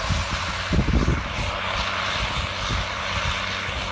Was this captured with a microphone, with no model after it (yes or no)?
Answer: yes